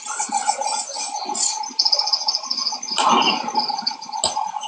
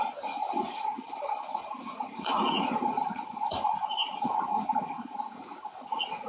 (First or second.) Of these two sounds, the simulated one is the second